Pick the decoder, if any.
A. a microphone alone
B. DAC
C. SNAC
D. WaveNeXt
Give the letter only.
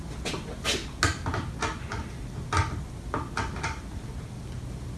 A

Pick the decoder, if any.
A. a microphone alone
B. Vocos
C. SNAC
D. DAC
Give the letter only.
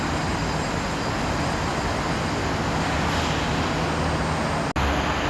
A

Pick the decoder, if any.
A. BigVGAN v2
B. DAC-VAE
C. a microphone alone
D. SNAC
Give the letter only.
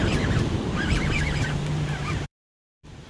A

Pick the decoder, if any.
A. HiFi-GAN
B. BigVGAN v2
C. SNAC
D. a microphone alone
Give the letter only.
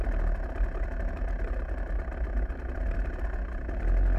D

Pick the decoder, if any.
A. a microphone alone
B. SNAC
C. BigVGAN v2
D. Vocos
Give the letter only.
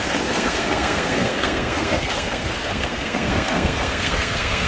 B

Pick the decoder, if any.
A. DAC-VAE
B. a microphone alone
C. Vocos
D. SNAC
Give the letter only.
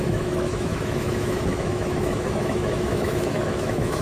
A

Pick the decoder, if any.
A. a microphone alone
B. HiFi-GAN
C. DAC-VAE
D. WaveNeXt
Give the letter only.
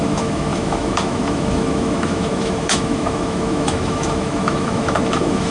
C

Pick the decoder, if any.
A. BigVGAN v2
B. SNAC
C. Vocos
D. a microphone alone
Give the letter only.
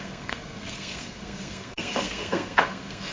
B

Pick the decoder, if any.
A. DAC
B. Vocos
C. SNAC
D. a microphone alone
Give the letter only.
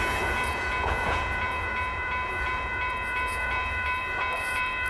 B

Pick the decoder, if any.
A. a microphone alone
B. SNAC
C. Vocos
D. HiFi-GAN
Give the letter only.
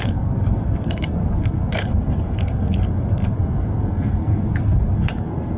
B